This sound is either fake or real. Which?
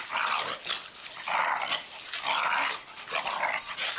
real